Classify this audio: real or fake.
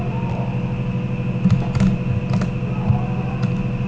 real